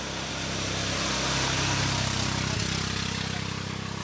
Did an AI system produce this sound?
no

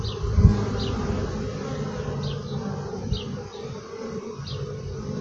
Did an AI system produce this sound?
no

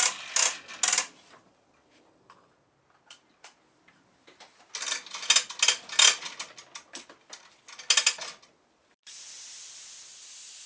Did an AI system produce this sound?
no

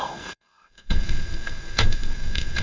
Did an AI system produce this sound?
yes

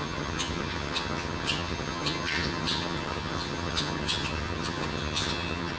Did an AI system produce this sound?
yes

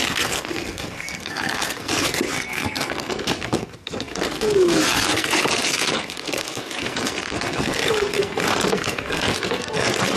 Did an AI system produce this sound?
yes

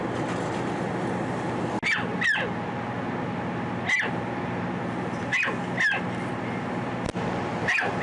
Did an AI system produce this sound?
no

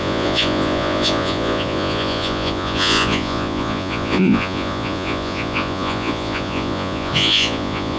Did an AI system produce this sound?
yes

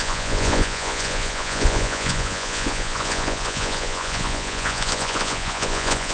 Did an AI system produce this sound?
yes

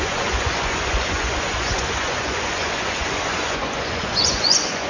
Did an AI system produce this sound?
yes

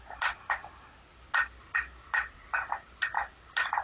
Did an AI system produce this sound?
no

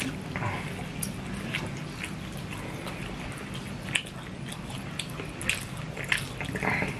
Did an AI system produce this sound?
no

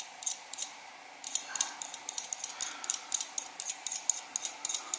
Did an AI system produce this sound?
no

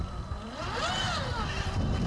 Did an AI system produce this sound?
no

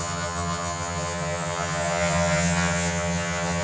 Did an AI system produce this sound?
yes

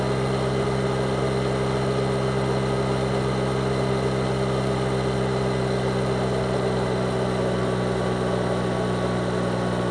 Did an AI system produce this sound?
no